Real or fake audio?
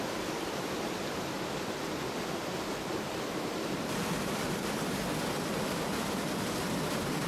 real